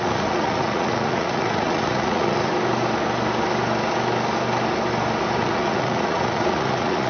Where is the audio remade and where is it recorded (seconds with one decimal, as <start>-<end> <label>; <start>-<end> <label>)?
0.0-2.5 remade; 2.5-5.4 recorded; 5.4-7.1 remade